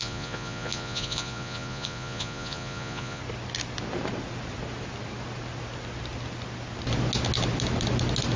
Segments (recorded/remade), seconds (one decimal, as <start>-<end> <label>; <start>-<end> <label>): 0.0-3.2 remade; 3.2-8.4 recorded